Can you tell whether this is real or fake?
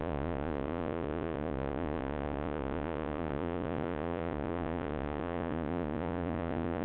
fake